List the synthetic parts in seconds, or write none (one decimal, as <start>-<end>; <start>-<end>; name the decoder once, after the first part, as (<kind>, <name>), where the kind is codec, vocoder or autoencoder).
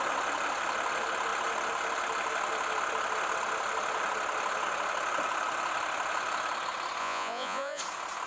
7.0-7.8 (vocoder, Vocos)